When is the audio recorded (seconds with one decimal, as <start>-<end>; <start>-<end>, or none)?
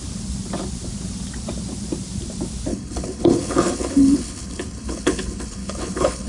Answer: 0.0-2.7